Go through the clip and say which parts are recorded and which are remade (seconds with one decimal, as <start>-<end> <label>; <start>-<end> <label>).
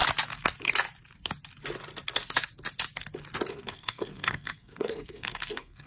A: 0.0-3.5 recorded; 3.5-5.9 remade